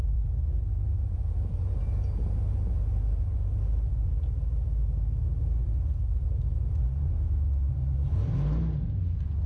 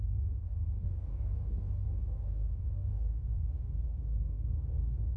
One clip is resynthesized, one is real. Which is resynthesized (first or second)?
second